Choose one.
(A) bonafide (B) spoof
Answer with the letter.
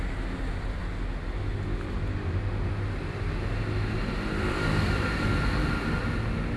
A